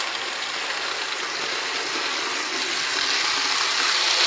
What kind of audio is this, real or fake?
real